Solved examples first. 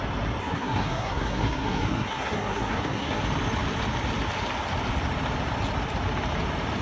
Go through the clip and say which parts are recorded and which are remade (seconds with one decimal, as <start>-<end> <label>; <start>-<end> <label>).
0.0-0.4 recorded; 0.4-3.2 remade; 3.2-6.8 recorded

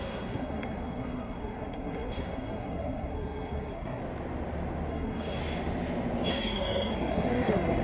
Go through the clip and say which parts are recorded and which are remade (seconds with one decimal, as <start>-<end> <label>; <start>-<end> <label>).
0.0-4.0 remade; 4.0-4.9 recorded; 4.9-5.4 remade; 5.4-6.3 recorded; 6.3-7.8 remade

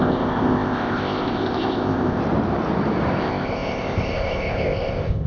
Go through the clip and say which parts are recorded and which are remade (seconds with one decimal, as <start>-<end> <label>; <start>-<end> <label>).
0.0-2.2 remade; 2.2-3.2 recorded; 3.2-5.3 remade

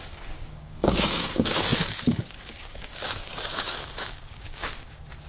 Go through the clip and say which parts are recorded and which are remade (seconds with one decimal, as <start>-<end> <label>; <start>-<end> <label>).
0.0-5.3 remade

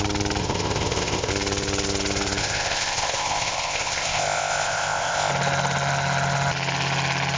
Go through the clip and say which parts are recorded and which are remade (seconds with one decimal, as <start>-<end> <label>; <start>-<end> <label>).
0.0-0.4 recorded; 0.4-1.3 remade; 1.3-2.4 recorded; 2.4-5.3 remade; 5.3-7.4 recorded

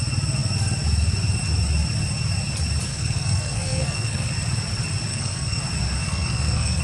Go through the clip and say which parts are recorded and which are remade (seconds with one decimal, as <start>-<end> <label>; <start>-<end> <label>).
0.0-2.9 recorded; 2.9-4.3 remade; 4.3-5.1 recorded; 5.1-5.6 remade; 5.6-6.0 recorded; 6.0-6.8 remade